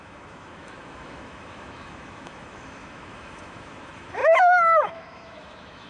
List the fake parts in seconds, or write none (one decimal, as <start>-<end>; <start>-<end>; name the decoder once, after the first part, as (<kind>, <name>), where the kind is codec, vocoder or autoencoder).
0.0-5.9 (autoencoder, DAC-VAE)